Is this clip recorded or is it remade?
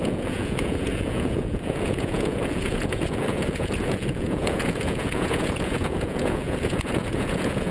remade